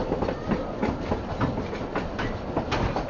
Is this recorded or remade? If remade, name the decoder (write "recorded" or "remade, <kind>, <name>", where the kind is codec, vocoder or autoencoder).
recorded